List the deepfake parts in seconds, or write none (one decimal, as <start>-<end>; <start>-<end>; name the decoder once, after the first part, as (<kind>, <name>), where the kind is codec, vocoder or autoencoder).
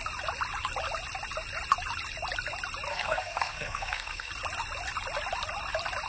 2.9-4.3 (codec, SNAC)